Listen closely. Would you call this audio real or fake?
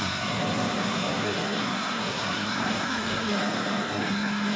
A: fake